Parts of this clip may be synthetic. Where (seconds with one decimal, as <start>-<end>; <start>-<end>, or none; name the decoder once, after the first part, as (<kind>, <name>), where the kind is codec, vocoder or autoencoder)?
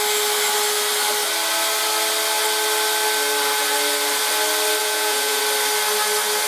4.8-5.4 (vocoder, Vocos)